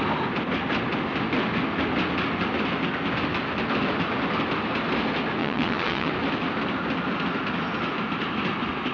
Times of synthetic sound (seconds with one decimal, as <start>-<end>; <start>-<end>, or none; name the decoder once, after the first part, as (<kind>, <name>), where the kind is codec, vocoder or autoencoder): 5.4-6.1 (vocoder, WaveNeXt)